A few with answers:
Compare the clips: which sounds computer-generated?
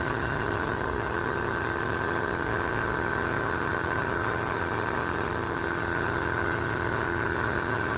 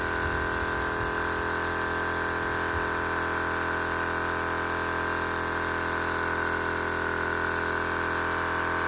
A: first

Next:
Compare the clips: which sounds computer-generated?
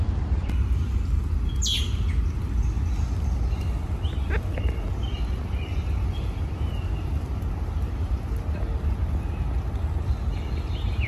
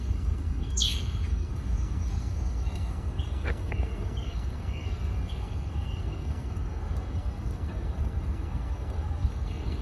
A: second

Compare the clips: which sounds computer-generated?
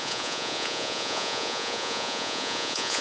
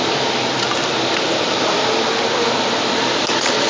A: first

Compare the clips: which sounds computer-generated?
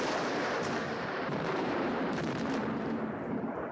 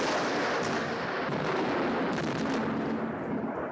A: first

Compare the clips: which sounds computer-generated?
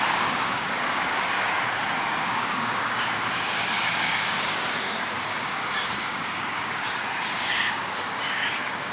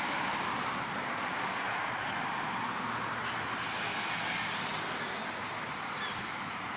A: first